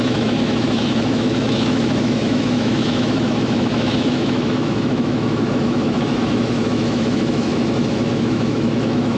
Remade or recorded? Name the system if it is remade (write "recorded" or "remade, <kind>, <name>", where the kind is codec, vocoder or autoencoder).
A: remade, autoencoder, DAC-VAE